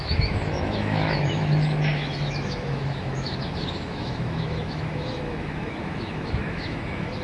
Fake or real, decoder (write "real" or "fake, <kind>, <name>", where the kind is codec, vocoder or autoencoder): fake, autoencoder, DAC-VAE